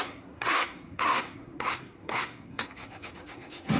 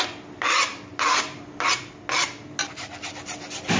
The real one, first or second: second